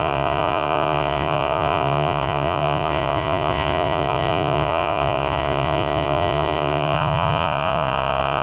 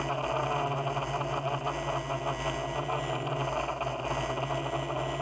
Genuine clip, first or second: second